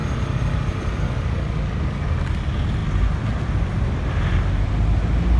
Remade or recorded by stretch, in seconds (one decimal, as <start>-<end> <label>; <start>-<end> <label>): 0.0-5.4 recorded